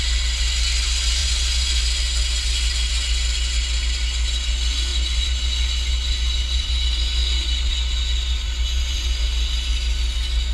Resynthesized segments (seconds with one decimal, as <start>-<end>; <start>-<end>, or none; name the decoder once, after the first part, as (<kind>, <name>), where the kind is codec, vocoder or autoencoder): 1.2-1.8 (vocoder, Vocos); 4.9-9.2